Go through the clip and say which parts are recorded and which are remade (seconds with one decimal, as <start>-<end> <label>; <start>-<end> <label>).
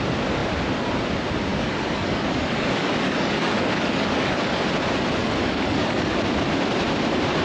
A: 0.0-1.5 recorded; 1.5-4.6 remade; 4.6-5.2 recorded; 5.2-6.2 remade; 6.2-7.4 recorded